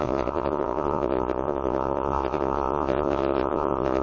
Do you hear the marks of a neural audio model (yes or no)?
yes